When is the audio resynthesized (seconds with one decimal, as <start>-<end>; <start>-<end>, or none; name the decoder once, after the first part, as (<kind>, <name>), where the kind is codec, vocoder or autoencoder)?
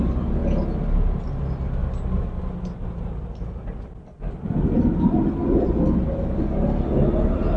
none